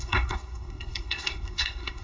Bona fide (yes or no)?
no